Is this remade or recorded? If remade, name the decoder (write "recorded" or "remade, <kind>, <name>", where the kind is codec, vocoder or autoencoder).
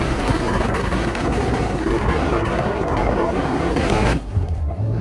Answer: remade, codec, SNAC